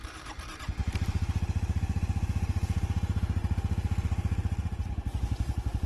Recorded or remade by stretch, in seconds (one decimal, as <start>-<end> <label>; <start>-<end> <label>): 0.0-5.9 recorded